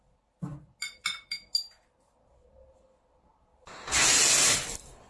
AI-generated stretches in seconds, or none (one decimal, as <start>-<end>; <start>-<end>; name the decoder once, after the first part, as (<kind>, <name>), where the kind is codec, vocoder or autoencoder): none